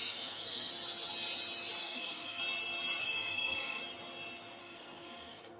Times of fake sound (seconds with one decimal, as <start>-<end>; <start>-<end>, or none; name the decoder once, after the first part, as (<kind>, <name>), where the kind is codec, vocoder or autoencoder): 0.0-0.7 (codec, SNAC); 1.8-2.4; 3.0-3.8; 4.6-5.6